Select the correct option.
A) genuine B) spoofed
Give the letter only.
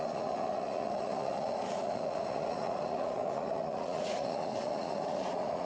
B